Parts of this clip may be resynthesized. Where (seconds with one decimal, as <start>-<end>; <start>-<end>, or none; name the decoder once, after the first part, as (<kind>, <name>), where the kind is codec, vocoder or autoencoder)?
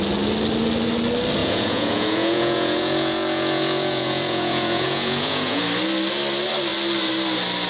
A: 1.4-5.6 (vocoder, Vocos)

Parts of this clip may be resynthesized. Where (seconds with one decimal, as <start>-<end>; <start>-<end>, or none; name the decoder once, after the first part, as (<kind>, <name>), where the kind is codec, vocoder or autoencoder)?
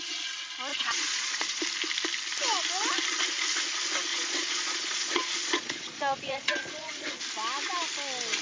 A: 0.7-1.6 (vocoder, Vocos); 4.1-7.2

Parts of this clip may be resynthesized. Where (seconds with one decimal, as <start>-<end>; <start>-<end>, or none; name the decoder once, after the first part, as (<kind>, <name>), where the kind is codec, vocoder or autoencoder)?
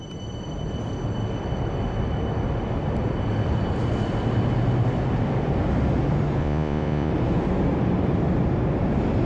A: 6.4-7.1 (vocoder, Vocos)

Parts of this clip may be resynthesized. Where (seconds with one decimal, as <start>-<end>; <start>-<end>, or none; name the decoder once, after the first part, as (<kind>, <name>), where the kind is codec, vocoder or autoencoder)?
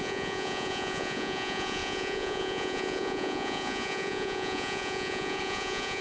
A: 0.0-6.0 (vocoder, Vocos)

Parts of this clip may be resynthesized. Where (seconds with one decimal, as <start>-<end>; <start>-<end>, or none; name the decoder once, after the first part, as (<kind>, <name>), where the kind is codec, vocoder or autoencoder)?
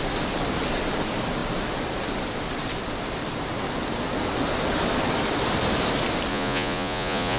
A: 6.3-7.4 (vocoder, Vocos)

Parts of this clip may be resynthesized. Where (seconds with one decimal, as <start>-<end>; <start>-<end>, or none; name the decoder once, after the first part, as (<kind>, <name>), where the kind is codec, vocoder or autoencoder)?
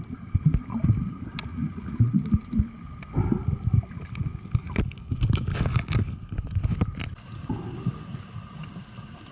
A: 1.5-2.3 (vocoder, Vocos)